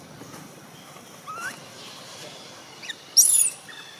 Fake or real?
fake